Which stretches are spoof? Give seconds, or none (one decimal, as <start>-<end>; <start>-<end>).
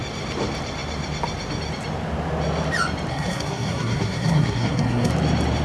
3.1-5.1